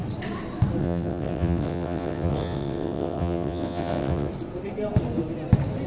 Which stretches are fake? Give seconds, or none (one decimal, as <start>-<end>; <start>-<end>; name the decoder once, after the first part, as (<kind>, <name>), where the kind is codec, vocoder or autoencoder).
0.8-4.3 (vocoder, WaveNeXt)